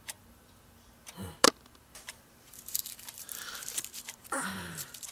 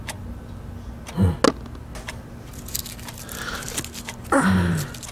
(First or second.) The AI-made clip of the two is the first